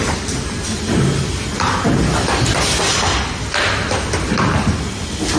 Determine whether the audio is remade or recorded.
recorded